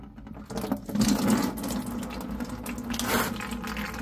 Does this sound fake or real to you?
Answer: real